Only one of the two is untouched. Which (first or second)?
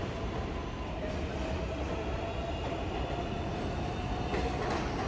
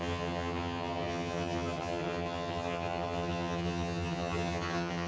first